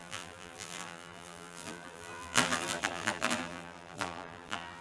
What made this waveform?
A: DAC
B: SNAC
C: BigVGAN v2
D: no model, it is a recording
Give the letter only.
C